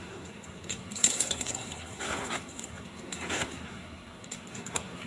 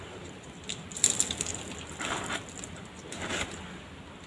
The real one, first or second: second